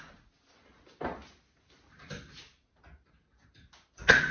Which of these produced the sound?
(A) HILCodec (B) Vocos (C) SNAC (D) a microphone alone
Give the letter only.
D